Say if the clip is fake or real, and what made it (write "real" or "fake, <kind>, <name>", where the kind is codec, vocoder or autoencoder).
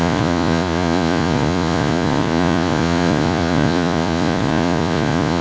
fake, vocoder, Vocos